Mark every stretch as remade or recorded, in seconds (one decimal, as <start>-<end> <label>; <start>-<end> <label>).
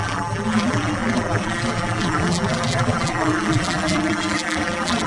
0.0-5.1 remade